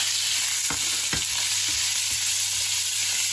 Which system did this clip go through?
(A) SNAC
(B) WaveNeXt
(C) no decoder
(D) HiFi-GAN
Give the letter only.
C